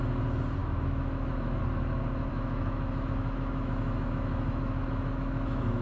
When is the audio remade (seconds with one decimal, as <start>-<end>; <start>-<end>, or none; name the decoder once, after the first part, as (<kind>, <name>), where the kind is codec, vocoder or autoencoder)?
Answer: 0.6-1.6 (autoencoder, DAC-VAE); 2.3-5.8